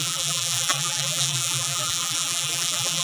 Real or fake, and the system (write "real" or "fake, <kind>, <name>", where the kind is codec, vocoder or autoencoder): fake, vocoder, BigVGAN v2